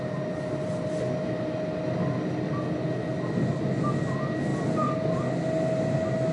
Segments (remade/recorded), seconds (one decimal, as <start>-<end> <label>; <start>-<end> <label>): 0.0-6.3 recorded